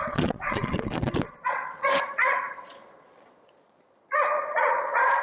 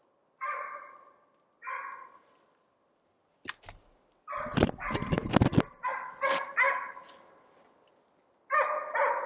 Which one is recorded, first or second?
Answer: second